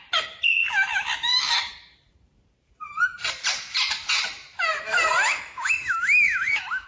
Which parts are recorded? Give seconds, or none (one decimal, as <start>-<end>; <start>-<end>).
0.0-5.3